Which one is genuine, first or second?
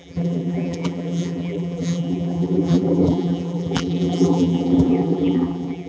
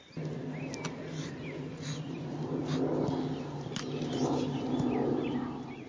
second